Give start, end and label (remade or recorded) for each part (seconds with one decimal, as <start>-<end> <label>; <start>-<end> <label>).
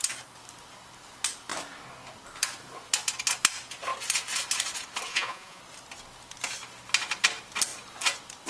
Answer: 0.0-5.1 recorded; 5.1-5.6 remade; 5.6-8.5 recorded